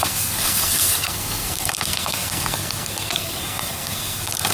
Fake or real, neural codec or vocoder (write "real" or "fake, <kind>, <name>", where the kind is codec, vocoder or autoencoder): fake, codec, SNAC